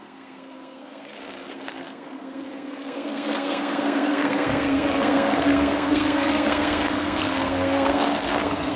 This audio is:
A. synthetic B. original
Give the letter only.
A